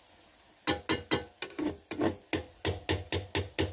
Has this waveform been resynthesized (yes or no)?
no